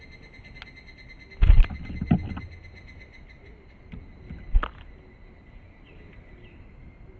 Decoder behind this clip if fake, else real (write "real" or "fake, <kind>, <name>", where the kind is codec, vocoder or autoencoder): real